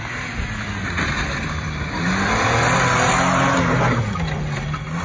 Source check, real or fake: real